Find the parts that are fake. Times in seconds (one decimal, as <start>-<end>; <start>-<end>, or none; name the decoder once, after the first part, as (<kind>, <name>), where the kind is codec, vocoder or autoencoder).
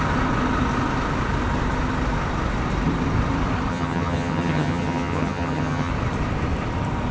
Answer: 3.7-5.9 (vocoder, HiFi-GAN)